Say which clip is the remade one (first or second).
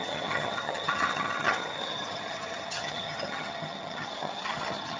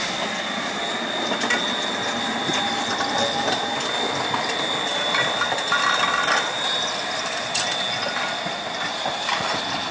first